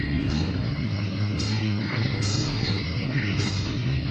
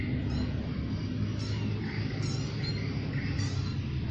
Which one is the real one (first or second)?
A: second